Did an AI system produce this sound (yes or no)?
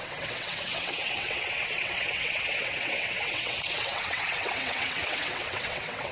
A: yes